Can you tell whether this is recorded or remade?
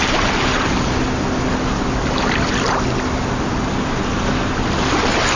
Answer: recorded